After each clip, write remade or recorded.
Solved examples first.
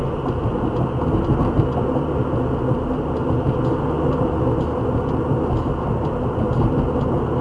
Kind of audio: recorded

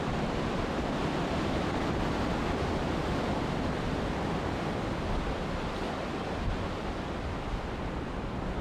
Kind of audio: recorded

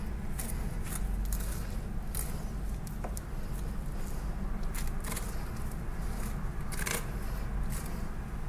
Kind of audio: recorded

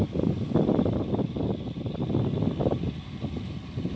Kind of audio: recorded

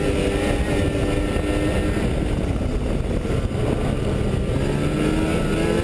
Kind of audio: recorded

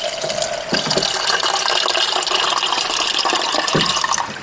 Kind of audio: recorded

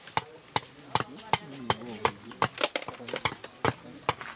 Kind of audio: recorded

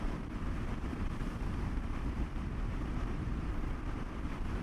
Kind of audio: remade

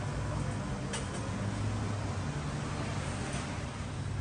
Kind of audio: recorded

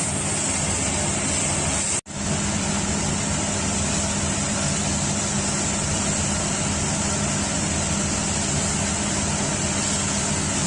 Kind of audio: recorded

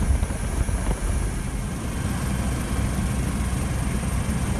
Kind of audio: recorded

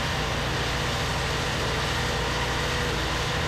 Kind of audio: recorded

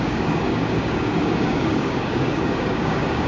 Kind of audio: remade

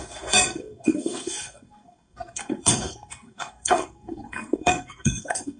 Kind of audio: remade